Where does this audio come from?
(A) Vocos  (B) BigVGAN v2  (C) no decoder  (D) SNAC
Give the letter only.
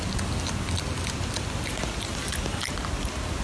C